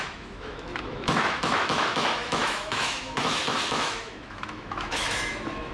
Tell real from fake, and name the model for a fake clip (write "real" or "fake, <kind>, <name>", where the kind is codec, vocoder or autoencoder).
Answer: fake, autoencoder, DAC-VAE